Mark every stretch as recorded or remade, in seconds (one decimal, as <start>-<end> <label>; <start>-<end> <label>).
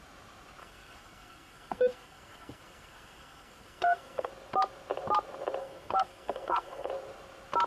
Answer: 0.0-0.6 recorded; 0.6-4.3 remade; 4.3-5.6 recorded; 5.6-6.9 remade; 6.9-7.7 recorded